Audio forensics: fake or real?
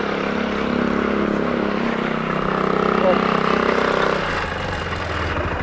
real